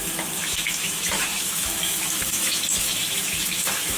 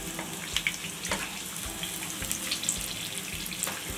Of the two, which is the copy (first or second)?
first